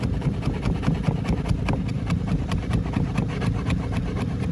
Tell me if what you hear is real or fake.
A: fake